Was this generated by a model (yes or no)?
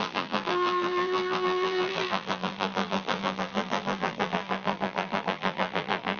yes